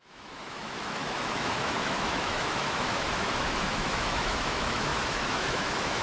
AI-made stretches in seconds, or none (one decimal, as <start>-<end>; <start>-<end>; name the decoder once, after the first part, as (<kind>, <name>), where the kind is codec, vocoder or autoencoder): 0.0-6.0 (autoencoder, DAC-VAE)